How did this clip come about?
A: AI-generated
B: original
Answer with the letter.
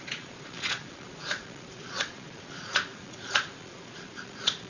A